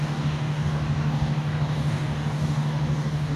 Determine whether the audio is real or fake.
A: fake